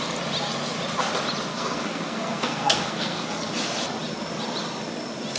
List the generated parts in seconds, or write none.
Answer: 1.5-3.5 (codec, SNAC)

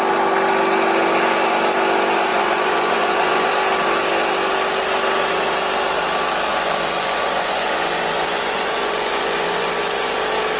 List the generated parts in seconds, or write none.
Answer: 2.3-3.5 (vocoder, Vocos); 6.5-10.2

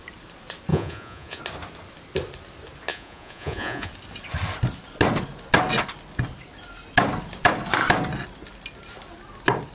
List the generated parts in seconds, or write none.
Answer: 0.7-1.4 (vocoder, Vocos); 2.9-3.9